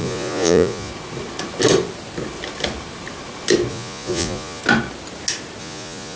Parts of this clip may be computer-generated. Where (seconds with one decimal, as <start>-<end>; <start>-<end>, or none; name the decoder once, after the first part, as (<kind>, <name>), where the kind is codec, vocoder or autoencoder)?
0.0-0.9 (vocoder, Vocos); 3.7-4.6; 5.6-6.2